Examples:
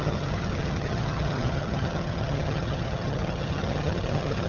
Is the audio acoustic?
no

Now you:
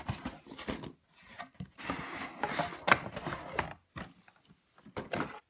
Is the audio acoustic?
yes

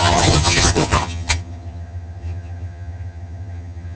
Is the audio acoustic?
no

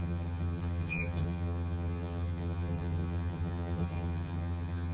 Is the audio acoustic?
no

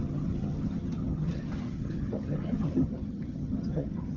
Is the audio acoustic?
no